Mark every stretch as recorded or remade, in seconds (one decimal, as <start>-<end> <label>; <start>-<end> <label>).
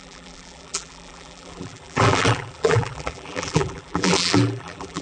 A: 0.0-5.0 remade